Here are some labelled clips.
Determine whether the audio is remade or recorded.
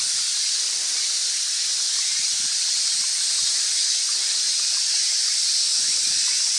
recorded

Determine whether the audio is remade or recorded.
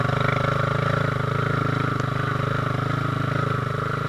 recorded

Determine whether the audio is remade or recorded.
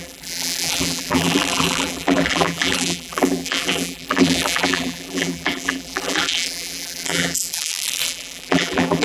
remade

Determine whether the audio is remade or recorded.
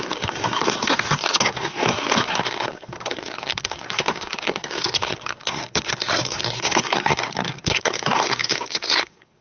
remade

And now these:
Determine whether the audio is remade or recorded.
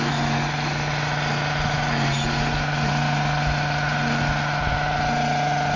recorded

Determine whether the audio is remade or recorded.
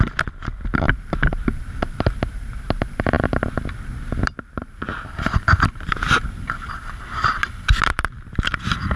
remade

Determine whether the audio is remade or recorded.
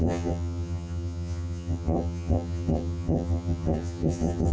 remade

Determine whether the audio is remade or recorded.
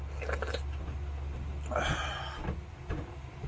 recorded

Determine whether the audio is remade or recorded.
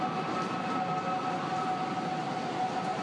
recorded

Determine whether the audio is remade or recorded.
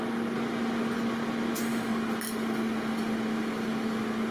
recorded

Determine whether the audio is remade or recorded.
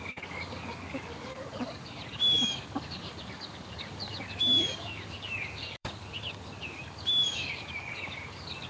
remade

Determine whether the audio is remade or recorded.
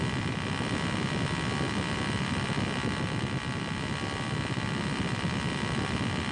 recorded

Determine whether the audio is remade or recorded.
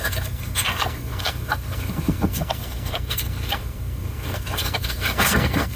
remade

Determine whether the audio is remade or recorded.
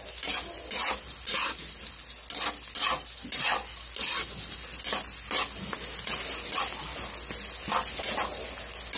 recorded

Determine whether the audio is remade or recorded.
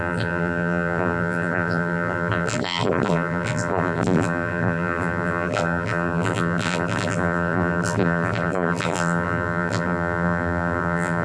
remade